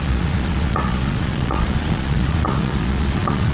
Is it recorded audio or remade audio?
remade